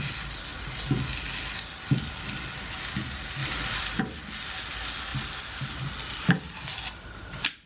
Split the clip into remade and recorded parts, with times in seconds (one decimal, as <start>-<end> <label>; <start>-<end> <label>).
0.0-3.4 recorded; 3.4-4.0 remade; 4.0-5.1 recorded; 5.1-5.9 remade; 5.9-7.7 recorded